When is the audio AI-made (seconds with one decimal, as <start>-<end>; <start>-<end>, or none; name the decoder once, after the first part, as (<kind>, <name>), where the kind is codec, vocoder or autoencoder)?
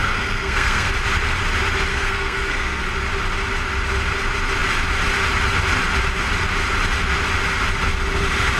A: 0.0-0.9 (codec, SNAC); 1.9-2.9